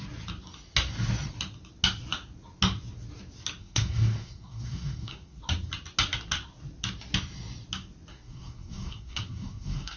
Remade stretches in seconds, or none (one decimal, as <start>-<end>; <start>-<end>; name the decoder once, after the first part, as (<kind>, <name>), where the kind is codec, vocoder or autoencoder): 3.6-5.4 (codec, SNAC); 8.1-10.0